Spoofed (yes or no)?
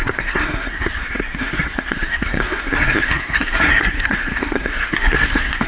yes